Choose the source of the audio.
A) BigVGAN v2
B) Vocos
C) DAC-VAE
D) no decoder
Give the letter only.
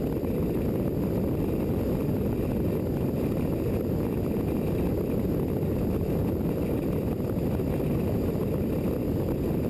D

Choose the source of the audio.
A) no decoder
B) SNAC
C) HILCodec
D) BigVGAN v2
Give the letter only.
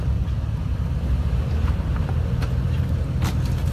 A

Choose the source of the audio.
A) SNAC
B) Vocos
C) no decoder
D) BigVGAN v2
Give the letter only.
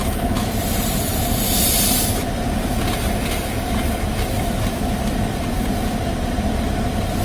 D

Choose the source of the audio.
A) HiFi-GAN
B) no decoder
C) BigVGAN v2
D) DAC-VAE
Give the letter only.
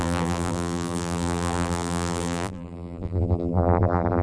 C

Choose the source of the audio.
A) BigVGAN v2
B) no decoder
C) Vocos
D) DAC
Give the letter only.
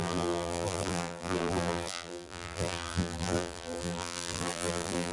A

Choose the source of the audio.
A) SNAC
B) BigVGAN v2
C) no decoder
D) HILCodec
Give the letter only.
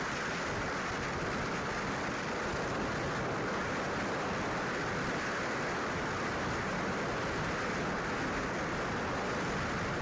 C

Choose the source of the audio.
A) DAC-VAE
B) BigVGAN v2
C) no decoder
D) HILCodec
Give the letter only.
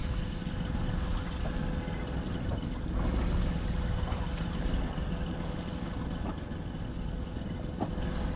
C